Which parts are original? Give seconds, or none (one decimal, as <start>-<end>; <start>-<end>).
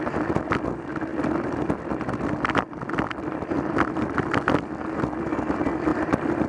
0.0-1.1; 5.0-5.9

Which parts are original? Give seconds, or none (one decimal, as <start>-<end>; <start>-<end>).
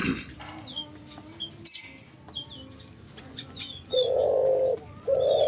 0.0-3.2; 4.2-4.9